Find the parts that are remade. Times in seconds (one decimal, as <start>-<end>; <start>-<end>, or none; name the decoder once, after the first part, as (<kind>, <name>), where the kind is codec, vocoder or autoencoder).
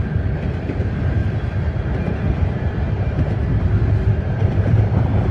0.0-1.2 (vocoder, BigVGAN v2); 4.2-5.3